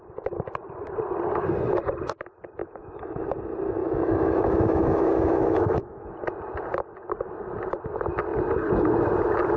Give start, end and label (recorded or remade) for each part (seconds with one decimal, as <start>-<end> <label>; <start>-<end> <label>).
0.0-2.6 recorded; 2.6-3.2 remade; 3.2-3.8 recorded; 3.8-6.1 remade; 6.1-9.6 recorded